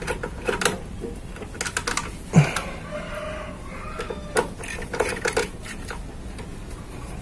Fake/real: real